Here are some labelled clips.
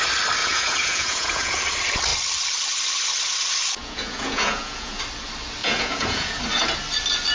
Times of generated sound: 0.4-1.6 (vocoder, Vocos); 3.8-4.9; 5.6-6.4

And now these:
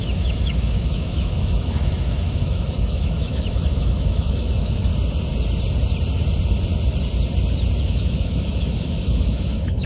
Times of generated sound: 0.0-4.9 (autoencoder, DAC-VAE); 7.8-9.9

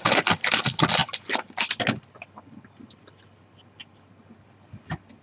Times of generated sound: none

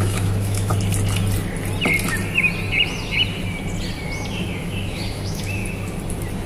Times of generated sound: 0.0-0.7 (autoencoder, DAC-VAE); 4.6-5.6

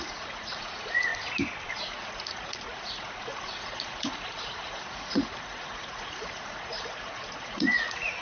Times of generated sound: 0.0-1.1 (vocoder, Vocos); 1.7-8.2

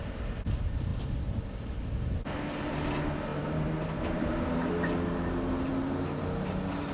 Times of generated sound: 0.9-1.4 (vocoder, BigVGAN v2); 3.3-4.7